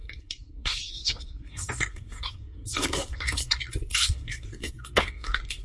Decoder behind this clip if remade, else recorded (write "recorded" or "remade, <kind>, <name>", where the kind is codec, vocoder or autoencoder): remade, codec, SNAC